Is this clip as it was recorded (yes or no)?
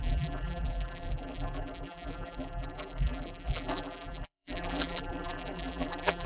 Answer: no